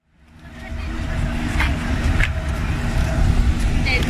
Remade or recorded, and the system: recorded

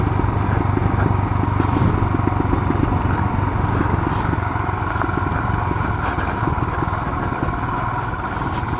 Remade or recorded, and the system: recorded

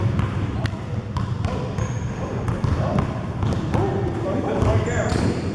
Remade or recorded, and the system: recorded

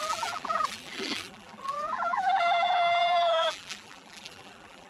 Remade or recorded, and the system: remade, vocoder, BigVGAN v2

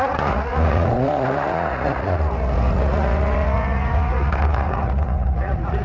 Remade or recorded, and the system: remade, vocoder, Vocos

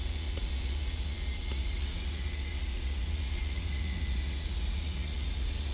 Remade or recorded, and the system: remade, vocoder, Vocos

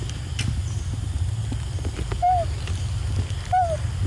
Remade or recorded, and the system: recorded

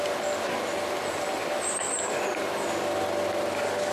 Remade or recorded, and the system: recorded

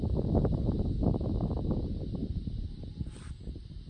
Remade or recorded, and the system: recorded